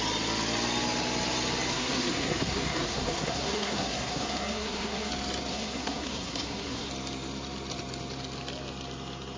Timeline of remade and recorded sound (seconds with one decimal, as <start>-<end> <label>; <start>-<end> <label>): 0.0-1.7 recorded; 1.7-5.1 remade; 5.1-5.5 recorded; 5.5-6.9 remade; 6.9-9.4 recorded